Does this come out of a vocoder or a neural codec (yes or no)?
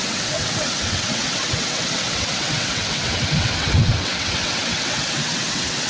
yes